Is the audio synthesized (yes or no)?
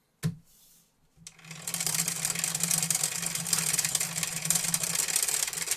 no